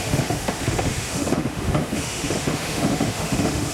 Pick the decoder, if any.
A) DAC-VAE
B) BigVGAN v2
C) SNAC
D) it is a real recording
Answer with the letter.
A